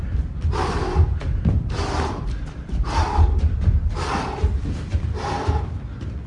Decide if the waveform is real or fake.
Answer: fake